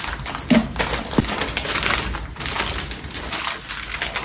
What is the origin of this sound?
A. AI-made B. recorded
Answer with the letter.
B